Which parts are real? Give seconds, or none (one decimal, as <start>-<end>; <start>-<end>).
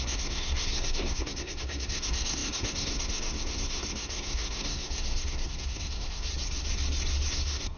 6.3-7.3